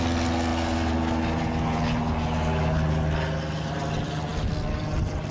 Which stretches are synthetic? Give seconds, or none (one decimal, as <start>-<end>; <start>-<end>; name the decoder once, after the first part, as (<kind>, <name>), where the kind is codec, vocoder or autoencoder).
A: none